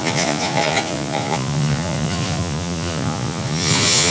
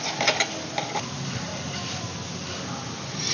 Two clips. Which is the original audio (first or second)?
second